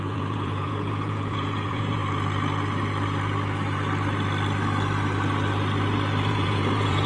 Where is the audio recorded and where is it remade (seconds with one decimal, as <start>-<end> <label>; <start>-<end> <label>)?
0.0-2.0 remade; 2.0-6.3 recorded; 6.3-7.1 remade